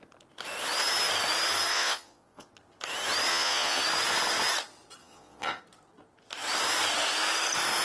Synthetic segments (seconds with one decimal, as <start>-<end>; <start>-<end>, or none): 1.7-2.5; 3.3-3.8; 5.0-5.6